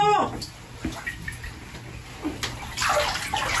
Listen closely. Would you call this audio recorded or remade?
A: recorded